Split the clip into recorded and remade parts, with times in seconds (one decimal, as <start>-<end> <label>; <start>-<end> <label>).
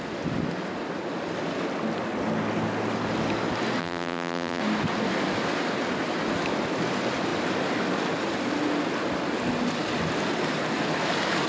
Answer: 0.0-3.8 recorded; 3.8-4.6 remade; 4.6-11.5 recorded